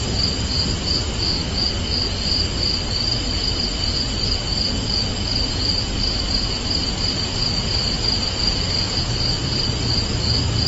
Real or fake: real